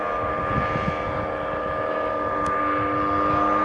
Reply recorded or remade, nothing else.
recorded